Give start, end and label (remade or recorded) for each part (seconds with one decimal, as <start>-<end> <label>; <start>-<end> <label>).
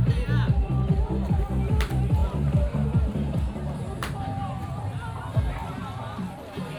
0.0-0.6 recorded; 0.6-1.4 remade; 1.4-6.8 recorded